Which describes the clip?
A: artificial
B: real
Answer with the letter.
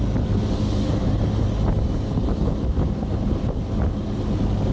B